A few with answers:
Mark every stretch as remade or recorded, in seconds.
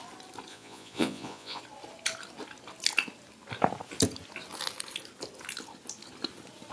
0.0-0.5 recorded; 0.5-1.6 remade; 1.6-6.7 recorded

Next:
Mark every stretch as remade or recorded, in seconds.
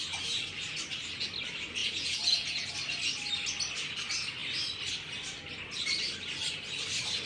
0.0-1.8 recorded; 1.8-2.7 remade; 2.7-7.3 recorded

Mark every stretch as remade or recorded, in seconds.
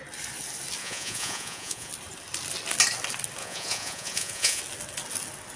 0.0-0.8 recorded; 0.8-1.9 remade; 1.9-3.4 recorded; 3.4-4.6 remade; 4.6-5.6 recorded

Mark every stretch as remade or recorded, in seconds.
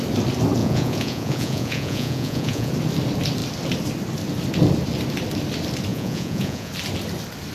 0.0-0.6 recorded; 0.6-2.7 remade; 2.7-5.9 recorded; 5.9-6.7 remade; 6.7-7.5 recorded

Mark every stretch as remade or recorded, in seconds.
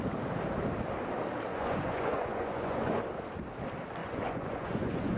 0.0-1.5 recorded; 1.5-3.0 remade; 3.0-4.0 recorded; 4.0-5.2 remade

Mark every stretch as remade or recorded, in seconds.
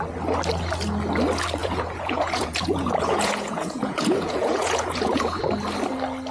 0.0-1.6 recorded; 1.6-5.4 remade; 5.4-6.3 recorded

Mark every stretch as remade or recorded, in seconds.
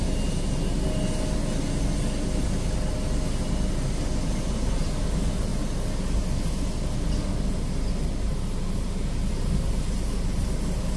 0.0-11.0 recorded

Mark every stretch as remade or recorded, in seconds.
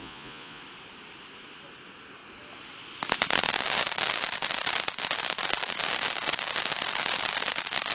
0.0-0.6 remade; 0.6-7.9 recorded